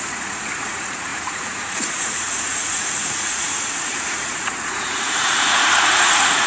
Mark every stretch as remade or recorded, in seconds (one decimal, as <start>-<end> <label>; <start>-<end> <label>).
0.0-6.5 remade